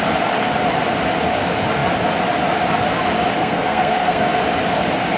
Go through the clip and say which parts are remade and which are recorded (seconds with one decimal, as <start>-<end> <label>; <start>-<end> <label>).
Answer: 0.0-3.4 recorded; 3.4-4.4 remade; 4.4-5.2 recorded